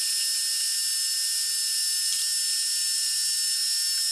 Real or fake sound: real